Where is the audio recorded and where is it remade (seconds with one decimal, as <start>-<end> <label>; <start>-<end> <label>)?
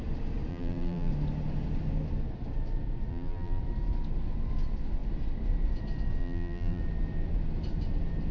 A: 0.0-0.5 recorded; 0.5-1.1 remade; 1.1-3.1 recorded; 3.1-3.6 remade; 3.6-6.2 recorded; 6.2-6.8 remade; 6.8-8.3 recorded